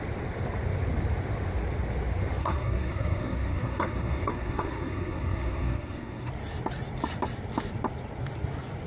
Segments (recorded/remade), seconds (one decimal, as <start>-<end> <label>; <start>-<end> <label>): 0.0-2.4 recorded; 2.4-6.3 remade; 6.3-8.9 recorded